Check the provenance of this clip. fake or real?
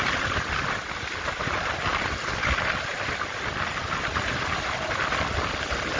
real